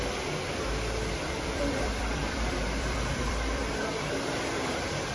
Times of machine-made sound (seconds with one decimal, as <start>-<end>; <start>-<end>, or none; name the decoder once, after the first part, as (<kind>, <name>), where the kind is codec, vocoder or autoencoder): 0.0-5.1 (vocoder, BigVGAN v2)